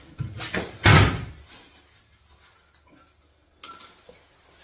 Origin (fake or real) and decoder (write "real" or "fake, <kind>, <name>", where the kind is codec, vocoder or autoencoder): real